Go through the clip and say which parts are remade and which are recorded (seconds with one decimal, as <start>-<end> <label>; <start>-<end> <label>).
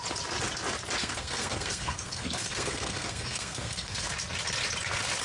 0.0-1.0 recorded; 1.0-4.1 remade; 4.1-5.2 recorded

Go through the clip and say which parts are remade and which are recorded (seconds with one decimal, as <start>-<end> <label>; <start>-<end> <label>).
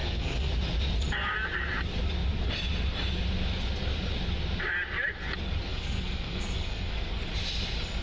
0.0-0.5 remade; 0.5-5.7 recorded; 5.7-7.1 remade; 7.1-8.0 recorded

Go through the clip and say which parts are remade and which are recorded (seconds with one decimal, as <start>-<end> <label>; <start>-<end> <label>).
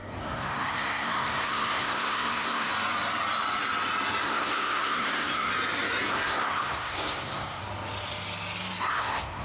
0.0-2.7 remade; 2.7-4.2 recorded; 4.2-5.5 remade; 5.5-6.1 recorded; 6.1-7.6 remade; 7.6-8.9 recorded; 8.9-9.4 remade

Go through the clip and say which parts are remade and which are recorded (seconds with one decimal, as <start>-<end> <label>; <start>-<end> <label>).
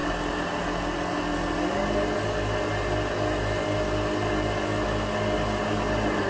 0.0-6.3 recorded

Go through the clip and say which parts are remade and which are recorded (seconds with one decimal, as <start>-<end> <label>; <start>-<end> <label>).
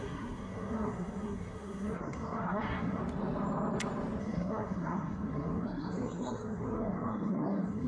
0.0-3.0 remade; 3.0-4.2 recorded; 4.2-7.9 remade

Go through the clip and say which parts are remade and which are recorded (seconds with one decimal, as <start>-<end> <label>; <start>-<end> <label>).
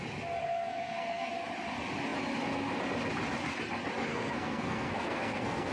0.0-0.4 recorded; 0.4-1.3 remade; 1.3-4.1 recorded; 4.1-5.7 remade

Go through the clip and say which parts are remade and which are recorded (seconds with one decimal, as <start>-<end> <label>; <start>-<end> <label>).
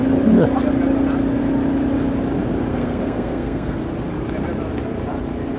0.0-2.7 recorded; 2.7-3.8 remade; 3.8-5.6 recorded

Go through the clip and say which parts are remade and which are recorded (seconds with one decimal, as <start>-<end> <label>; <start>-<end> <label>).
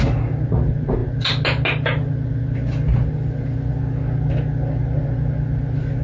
0.0-6.0 recorded